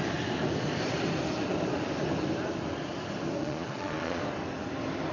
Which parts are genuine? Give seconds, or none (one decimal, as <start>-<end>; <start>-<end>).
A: 0.0-3.4; 4.2-5.1